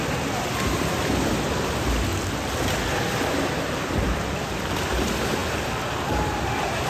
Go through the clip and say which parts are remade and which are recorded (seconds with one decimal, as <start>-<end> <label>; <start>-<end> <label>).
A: 0.0-2.1 remade; 2.1-3.0 recorded; 3.0-6.9 remade

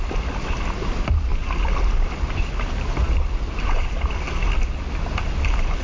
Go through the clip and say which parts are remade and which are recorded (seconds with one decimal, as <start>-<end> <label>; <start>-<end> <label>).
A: 0.0-5.8 recorded